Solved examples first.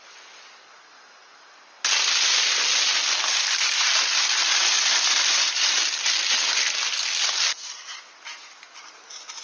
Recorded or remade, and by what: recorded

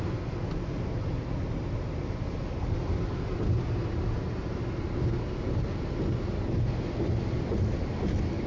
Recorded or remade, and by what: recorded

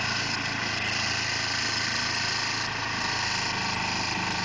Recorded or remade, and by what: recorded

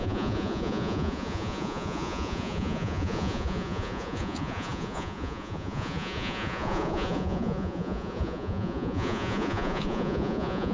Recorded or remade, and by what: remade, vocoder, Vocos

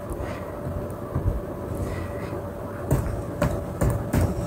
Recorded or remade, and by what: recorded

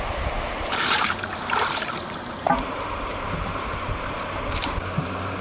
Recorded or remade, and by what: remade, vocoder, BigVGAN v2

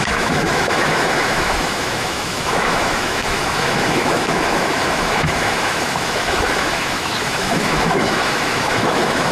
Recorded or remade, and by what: remade, autoencoder, DAC-VAE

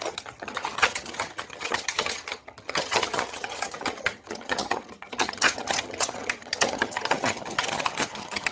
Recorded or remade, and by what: remade, vocoder, HiFi-GAN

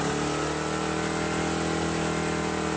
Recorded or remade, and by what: recorded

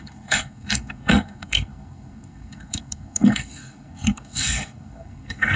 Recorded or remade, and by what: remade, codec, SNAC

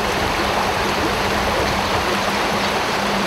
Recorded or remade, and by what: remade, vocoder, BigVGAN v2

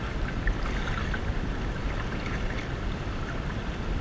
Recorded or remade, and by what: recorded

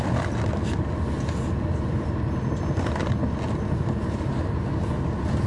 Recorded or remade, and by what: recorded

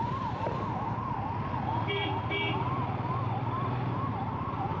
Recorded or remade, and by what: recorded